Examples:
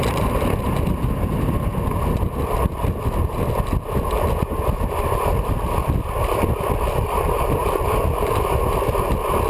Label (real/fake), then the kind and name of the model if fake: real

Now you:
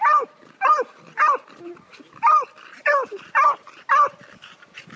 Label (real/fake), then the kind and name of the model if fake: real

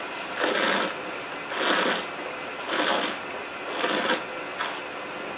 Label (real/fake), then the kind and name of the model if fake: real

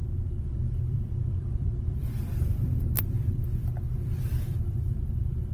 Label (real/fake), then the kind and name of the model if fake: fake, vocoder, BigVGAN v2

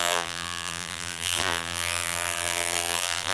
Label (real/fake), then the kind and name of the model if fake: fake, vocoder, BigVGAN v2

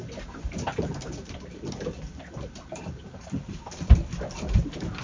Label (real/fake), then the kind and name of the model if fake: fake, vocoder, BigVGAN v2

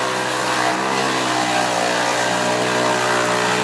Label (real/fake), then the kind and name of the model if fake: real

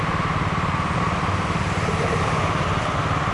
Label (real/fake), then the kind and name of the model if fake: real